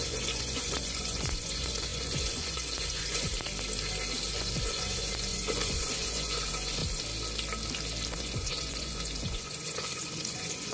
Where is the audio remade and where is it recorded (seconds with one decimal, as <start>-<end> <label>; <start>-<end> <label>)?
0.0-3.3 remade; 3.3-4.3 recorded; 4.3-6.8 remade; 6.8-8.1 recorded; 8.1-10.7 remade